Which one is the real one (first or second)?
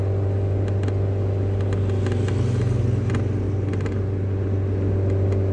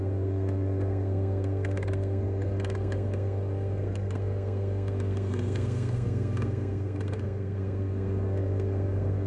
first